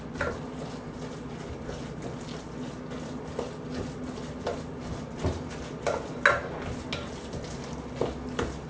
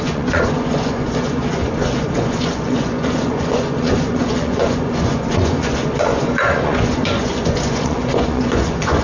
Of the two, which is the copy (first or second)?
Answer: second